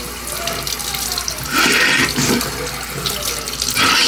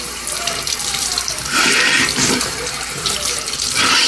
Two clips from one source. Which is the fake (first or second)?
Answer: second